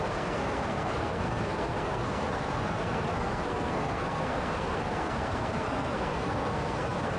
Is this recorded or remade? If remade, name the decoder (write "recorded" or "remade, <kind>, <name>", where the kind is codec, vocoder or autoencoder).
remade, codec, SNAC